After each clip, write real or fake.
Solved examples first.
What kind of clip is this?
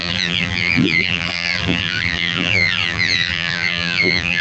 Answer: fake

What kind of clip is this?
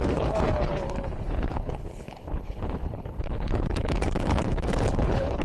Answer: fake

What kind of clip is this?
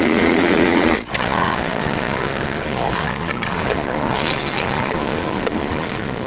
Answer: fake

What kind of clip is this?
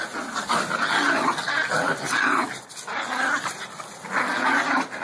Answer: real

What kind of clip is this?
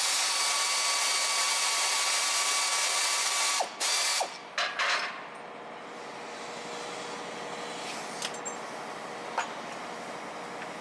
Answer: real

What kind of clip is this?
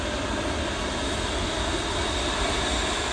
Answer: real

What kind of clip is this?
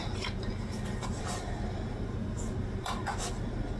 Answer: real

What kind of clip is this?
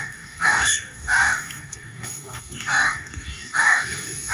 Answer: fake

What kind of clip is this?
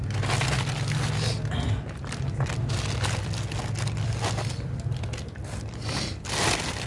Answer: real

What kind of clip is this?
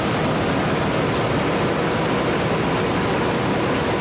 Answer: real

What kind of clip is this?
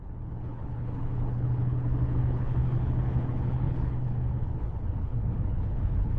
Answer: fake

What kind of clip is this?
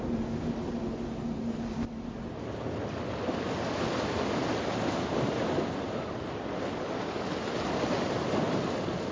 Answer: real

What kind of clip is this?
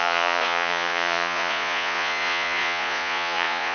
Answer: fake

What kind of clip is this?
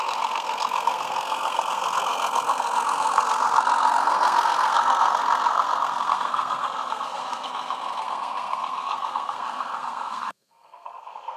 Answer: fake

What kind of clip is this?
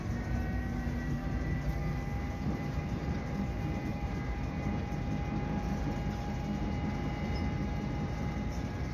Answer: fake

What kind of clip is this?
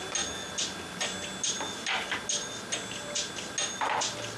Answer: real